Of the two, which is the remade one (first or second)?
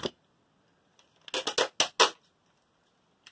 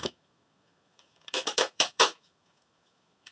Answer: second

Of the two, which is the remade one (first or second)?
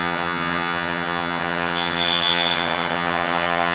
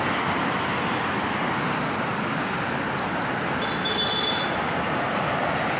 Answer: first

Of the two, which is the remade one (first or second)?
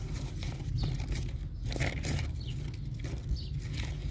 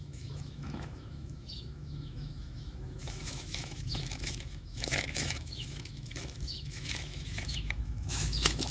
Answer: second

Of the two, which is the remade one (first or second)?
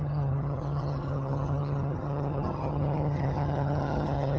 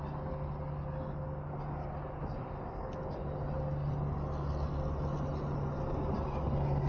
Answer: first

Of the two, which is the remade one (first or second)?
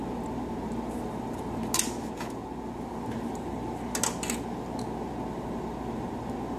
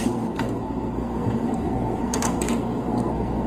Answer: second